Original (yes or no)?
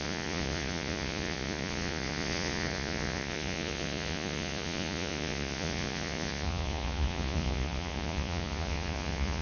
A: no